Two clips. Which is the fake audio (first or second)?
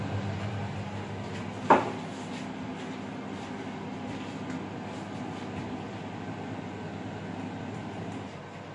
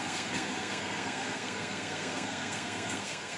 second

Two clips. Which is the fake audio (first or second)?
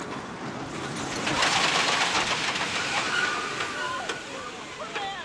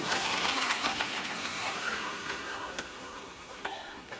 second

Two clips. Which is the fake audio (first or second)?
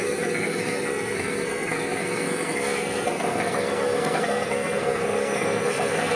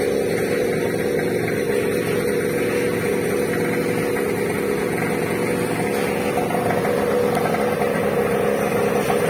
first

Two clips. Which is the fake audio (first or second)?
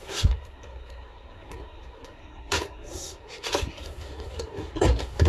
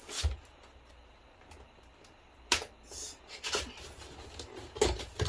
first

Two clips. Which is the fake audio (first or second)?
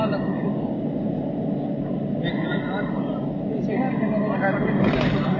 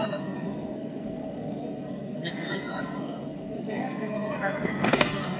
second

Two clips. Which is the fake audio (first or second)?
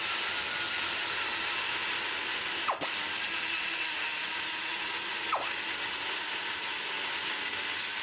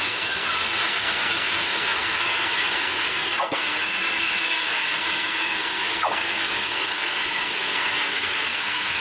second